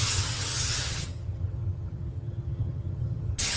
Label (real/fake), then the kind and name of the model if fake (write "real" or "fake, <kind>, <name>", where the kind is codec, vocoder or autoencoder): fake, vocoder, HiFi-GAN